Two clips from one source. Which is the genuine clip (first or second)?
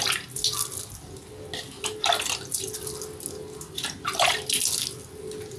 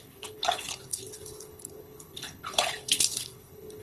first